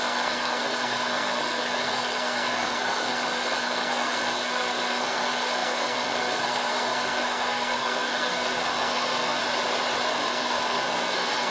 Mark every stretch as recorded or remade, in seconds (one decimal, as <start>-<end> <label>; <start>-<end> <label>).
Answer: 0.0-9.4 remade; 9.4-10.1 recorded; 10.1-11.5 remade